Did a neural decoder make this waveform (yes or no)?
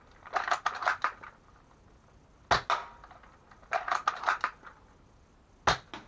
no